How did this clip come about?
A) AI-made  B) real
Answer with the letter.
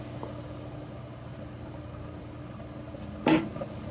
B